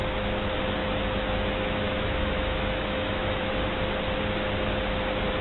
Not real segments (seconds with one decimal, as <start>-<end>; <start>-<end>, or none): 0.8-3.5